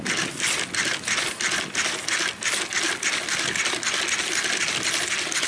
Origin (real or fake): real